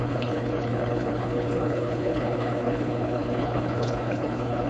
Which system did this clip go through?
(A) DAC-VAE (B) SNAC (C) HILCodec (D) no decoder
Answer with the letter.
C